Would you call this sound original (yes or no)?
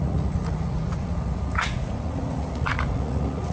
no